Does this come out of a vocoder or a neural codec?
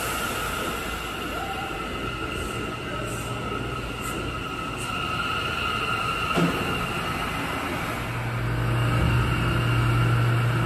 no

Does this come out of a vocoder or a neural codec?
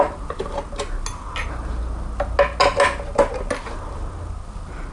no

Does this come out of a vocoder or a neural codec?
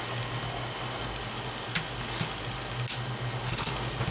no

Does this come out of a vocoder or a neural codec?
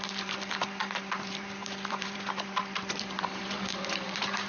yes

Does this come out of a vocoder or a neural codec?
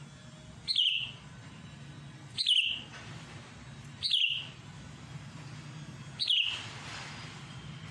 no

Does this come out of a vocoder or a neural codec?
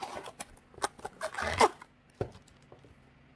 no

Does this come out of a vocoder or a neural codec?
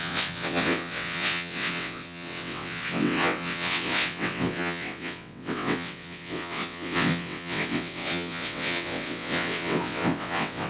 yes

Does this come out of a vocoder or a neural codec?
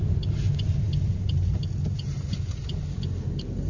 no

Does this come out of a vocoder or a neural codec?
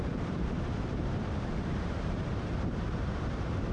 yes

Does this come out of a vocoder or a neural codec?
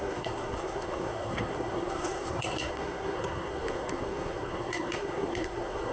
yes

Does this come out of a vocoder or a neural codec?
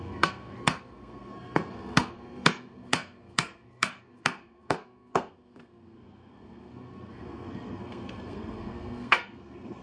yes